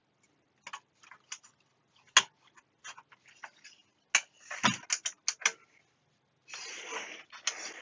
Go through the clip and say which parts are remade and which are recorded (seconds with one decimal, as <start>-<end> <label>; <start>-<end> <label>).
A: 0.0-7.8 recorded